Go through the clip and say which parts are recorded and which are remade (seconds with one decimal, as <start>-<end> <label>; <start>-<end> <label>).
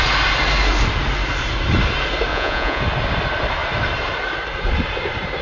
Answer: 0.0-2.3 recorded; 2.3-2.8 remade; 2.8-5.4 recorded